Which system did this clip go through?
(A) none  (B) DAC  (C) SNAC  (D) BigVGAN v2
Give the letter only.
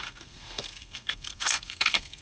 C